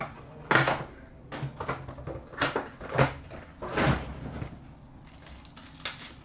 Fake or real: real